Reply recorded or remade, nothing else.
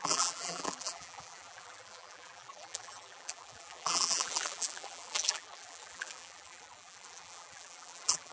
remade